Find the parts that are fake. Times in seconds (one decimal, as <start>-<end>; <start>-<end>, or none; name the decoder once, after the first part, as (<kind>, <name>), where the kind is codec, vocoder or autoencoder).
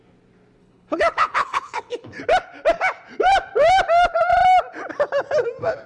0.6-2.2 (codec, HILCodec)